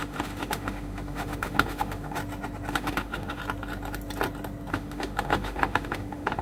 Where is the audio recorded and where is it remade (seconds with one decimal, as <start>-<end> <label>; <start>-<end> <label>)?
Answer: 0.0-2.2 remade; 2.2-2.7 recorded; 2.7-3.4 remade; 3.4-4.7 recorded; 4.7-6.4 remade